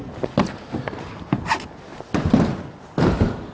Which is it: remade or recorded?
recorded